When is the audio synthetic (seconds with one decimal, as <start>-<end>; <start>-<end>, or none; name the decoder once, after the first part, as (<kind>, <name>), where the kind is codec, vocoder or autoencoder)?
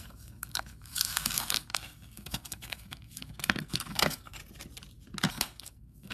0.0-4.4 (codec, SNAC); 5.3-6.1